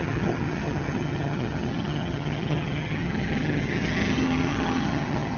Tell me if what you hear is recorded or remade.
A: remade